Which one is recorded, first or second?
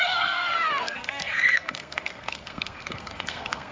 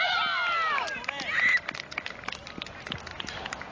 second